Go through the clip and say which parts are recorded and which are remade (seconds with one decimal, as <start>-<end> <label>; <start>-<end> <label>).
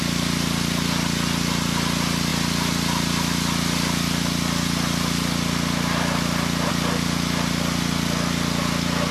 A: 0.0-9.1 recorded